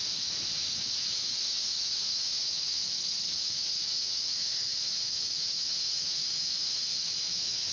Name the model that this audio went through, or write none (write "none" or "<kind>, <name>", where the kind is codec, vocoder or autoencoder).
autoencoder, DAC-VAE